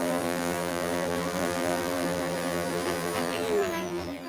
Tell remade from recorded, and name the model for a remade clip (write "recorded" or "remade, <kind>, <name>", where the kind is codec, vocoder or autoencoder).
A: remade, vocoder, BigVGAN v2